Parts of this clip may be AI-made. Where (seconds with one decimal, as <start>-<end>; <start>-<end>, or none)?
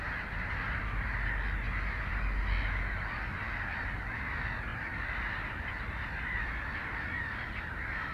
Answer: none